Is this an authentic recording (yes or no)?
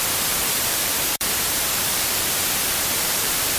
no